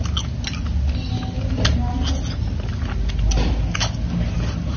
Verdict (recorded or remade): recorded